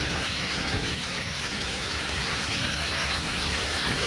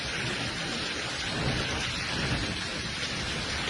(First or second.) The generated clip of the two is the first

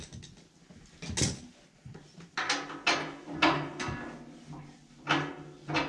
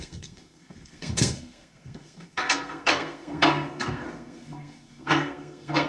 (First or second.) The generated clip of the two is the second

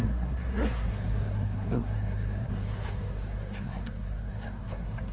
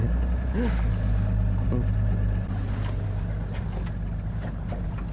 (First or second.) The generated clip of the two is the first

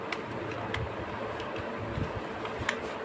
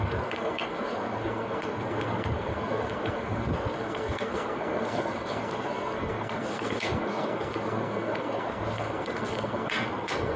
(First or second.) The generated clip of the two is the second